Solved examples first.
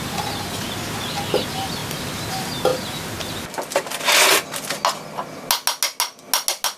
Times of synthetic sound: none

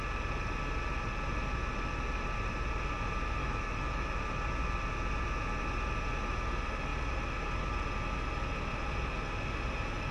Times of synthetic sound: 3.4-4.3

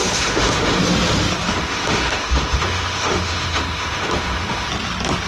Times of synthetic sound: 0.0-0.8; 1.5-4.7

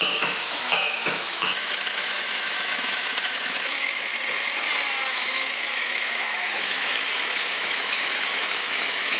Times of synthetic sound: 0.0-4.1; 5.1-9.2